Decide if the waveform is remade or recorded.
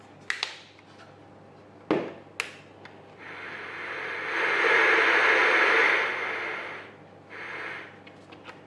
recorded